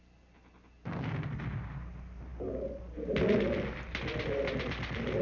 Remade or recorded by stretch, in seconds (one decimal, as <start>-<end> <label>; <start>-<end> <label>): 0.0-5.2 recorded